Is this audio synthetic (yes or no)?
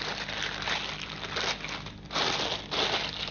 no